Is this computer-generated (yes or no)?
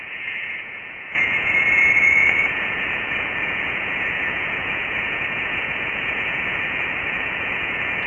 yes